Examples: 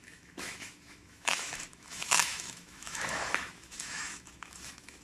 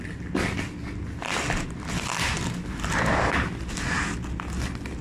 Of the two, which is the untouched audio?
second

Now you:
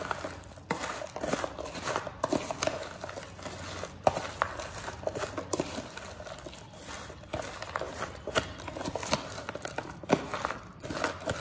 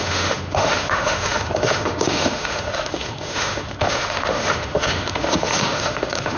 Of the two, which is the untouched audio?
first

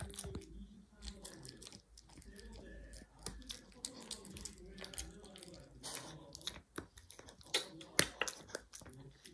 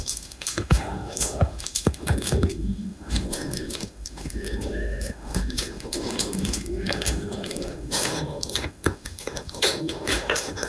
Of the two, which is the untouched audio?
first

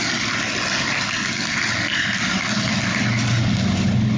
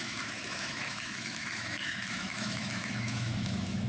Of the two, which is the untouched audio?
first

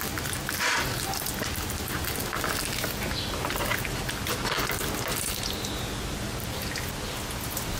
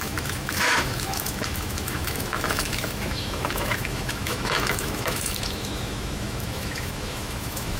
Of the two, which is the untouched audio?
first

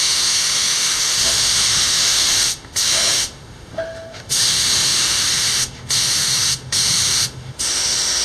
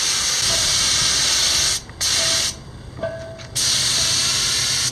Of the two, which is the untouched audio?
second